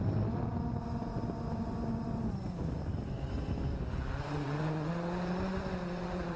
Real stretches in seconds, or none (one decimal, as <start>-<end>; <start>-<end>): 0.0-6.4